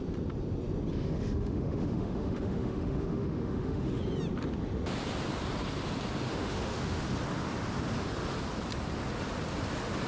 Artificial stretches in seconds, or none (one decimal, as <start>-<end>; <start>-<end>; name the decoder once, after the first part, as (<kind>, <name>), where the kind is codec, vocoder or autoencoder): 0.9-4.0 (autoencoder, DAC-VAE); 6.3-7.0